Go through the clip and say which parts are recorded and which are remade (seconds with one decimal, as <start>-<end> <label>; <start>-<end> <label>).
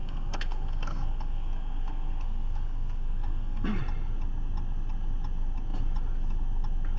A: 0.0-3.8 remade; 3.8-7.0 recorded